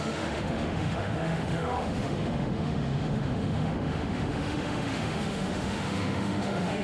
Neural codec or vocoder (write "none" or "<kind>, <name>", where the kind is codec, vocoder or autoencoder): autoencoder, DAC-VAE